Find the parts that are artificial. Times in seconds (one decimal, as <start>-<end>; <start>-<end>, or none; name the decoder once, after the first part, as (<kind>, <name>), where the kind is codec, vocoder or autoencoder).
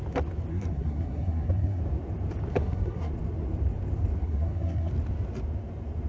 0.5-1.8 (codec, SNAC); 2.5-3.1; 4.2-4.9